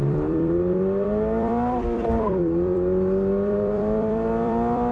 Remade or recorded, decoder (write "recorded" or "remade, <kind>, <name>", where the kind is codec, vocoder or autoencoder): remade, vocoder, BigVGAN v2